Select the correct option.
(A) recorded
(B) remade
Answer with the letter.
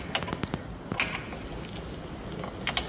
A